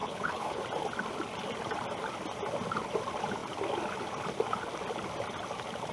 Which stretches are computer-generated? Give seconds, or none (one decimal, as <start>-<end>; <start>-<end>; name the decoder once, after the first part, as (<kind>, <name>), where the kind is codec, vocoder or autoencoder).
0.0-0.6 (codec, HILCodec)